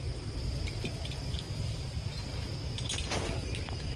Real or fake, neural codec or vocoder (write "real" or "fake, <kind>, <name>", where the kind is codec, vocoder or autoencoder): real